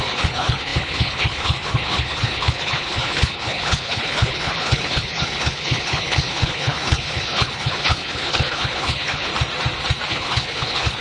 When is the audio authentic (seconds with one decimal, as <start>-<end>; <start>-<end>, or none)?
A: 9.3-10.1